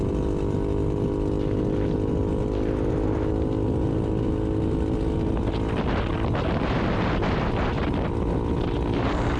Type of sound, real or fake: real